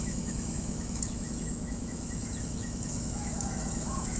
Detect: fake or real fake